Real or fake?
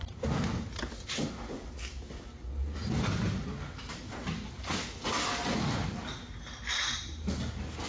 real